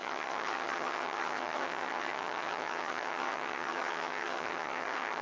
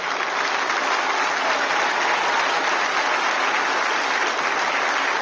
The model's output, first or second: first